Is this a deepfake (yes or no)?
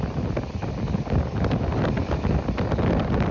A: no